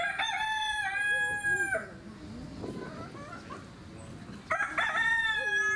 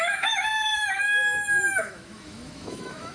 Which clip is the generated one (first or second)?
second